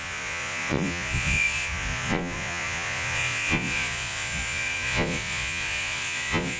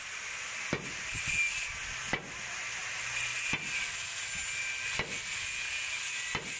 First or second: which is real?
second